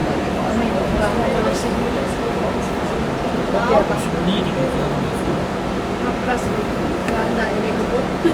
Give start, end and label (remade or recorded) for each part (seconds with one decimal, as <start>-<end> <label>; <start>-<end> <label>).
0.0-7.0 recorded; 7.0-7.8 remade; 7.8-8.3 recorded